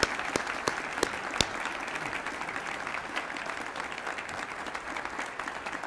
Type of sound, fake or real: real